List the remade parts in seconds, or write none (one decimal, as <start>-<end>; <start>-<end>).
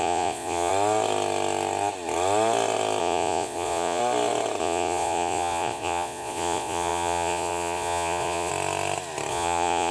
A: 0.0-0.7; 3.0-4.0; 4.6-8.5; 9.3-9.9